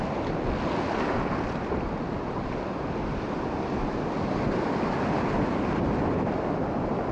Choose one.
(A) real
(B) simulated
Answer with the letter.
A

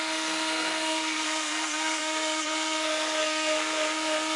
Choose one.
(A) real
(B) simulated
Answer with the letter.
B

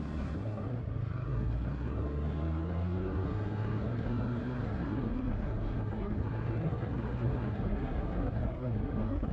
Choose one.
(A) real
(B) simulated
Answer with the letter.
B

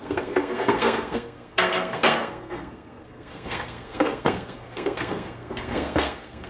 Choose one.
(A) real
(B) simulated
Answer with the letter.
B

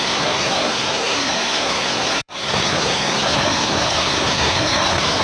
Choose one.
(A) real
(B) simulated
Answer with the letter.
B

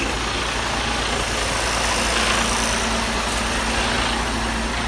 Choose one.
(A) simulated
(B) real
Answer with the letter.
B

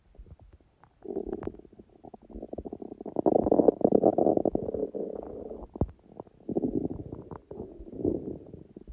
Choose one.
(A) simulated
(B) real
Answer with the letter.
B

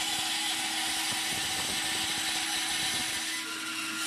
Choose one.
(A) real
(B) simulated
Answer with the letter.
A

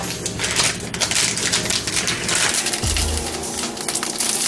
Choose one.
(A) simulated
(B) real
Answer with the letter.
B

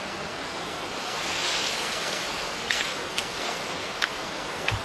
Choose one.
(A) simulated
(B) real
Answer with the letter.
A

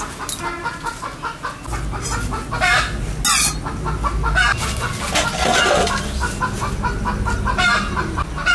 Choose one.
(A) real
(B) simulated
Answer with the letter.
A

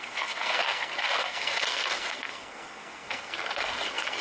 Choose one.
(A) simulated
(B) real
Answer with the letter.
A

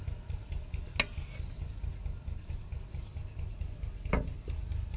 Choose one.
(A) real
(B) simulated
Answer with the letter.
A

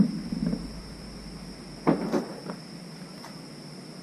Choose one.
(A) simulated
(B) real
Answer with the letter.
B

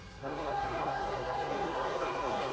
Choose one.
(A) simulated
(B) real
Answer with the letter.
A